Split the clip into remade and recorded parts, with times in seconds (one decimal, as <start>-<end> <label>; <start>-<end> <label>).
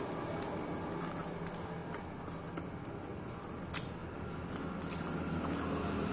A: 0.0-6.1 recorded